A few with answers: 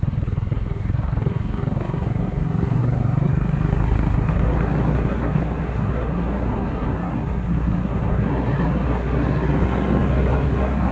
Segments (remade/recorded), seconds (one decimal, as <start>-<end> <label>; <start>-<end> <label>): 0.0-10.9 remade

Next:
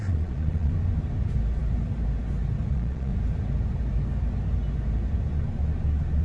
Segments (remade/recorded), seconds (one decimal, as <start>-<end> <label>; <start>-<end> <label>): 0.0-0.7 remade; 0.7-2.7 recorded; 2.7-3.1 remade; 3.1-6.2 recorded

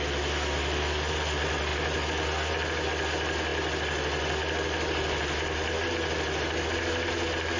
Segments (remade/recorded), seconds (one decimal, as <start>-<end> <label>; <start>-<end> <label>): 0.0-7.6 recorded

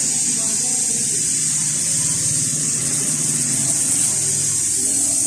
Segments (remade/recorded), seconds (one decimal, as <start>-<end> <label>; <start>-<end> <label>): 0.0-2.5 recorded; 2.5-4.1 remade; 4.1-5.3 recorded

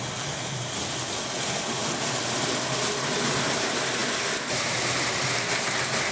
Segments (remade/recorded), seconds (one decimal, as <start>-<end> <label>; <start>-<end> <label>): 0.0-6.1 recorded

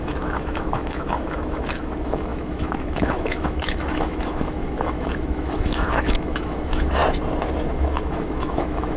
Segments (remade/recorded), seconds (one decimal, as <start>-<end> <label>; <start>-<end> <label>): 0.0-7.0 remade; 7.0-7.7 recorded; 7.7-9.0 remade